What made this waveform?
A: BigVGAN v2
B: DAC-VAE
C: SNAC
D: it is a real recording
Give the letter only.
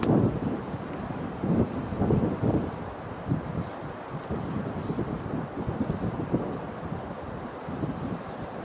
A